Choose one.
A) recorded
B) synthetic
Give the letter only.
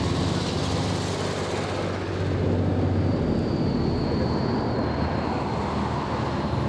A